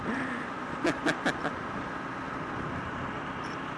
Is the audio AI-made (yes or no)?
no